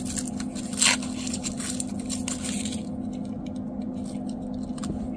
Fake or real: real